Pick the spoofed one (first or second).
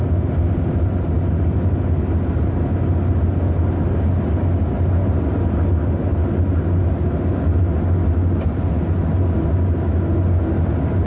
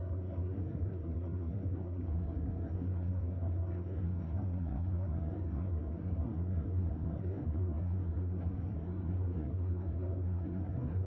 second